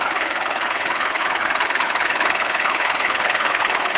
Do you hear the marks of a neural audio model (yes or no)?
yes